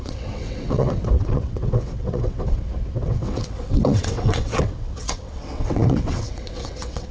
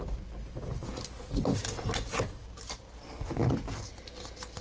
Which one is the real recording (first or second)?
second